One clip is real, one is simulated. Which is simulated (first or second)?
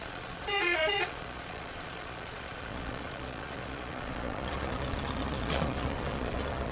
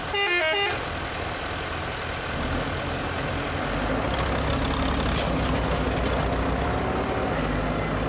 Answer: first